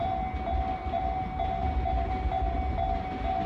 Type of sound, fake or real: real